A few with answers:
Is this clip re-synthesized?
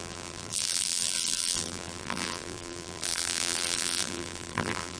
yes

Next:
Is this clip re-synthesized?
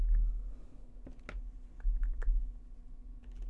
no